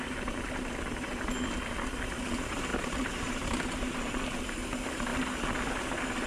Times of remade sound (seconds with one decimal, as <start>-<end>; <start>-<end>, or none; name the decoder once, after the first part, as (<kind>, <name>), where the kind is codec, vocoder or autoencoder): 2.7-4.0 (vocoder, BigVGAN v2)